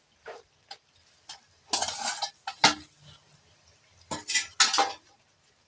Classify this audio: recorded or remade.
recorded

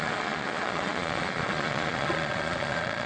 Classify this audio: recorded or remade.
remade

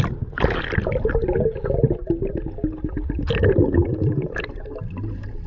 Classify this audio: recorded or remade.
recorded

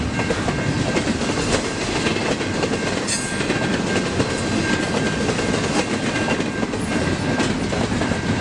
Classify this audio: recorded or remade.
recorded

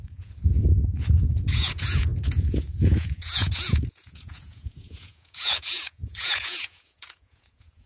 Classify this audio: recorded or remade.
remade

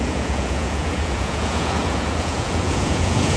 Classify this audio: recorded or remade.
remade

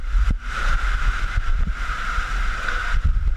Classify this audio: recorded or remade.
remade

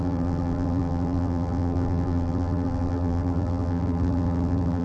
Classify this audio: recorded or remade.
remade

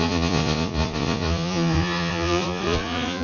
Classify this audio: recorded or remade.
remade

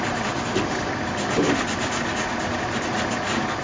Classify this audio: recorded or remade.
recorded